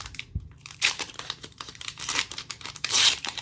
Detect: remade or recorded remade